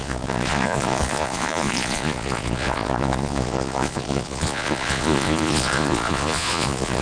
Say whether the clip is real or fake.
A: fake